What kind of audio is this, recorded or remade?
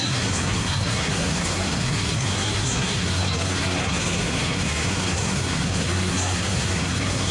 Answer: remade